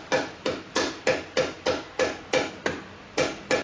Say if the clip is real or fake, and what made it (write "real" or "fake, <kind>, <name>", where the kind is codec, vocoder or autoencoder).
real